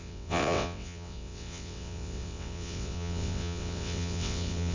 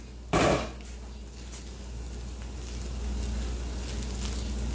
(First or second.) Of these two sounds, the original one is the second